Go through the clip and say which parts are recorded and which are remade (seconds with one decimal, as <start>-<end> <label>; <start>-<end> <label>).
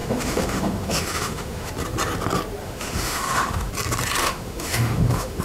0.0-1.7 remade; 1.7-2.6 recorded; 2.6-3.7 remade; 3.7-4.2 recorded; 4.2-5.4 remade